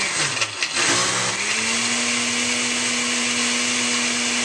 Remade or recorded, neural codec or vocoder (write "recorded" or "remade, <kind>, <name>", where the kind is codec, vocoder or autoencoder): recorded